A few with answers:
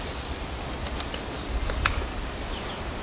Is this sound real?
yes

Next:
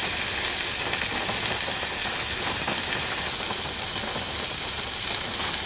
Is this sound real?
yes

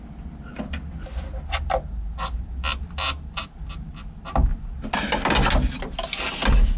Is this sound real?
yes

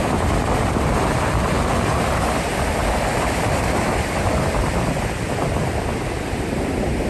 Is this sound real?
yes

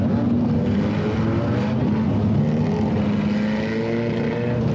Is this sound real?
yes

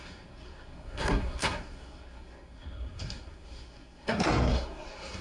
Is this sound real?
no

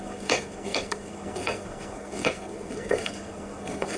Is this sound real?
no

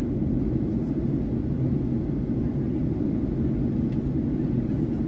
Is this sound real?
yes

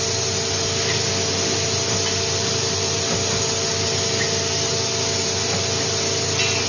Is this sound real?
yes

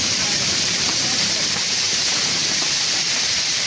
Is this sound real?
no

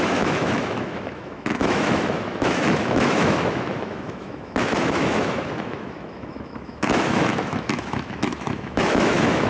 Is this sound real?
no